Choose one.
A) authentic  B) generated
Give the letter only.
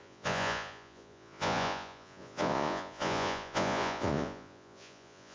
B